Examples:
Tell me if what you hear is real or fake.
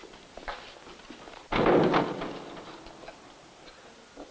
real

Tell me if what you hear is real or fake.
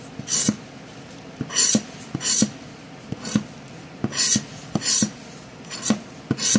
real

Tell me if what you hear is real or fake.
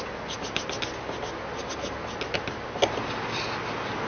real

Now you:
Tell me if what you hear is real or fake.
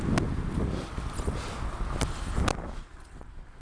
real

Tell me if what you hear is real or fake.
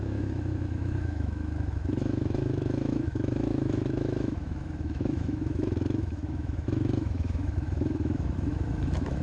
fake